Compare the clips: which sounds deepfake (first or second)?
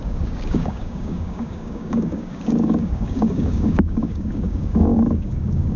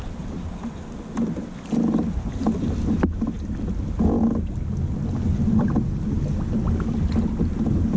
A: first